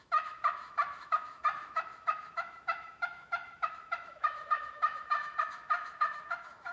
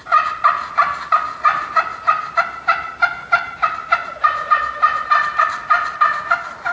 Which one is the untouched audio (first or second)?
second